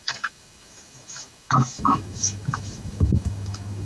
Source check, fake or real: fake